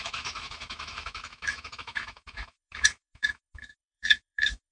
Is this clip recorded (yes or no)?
no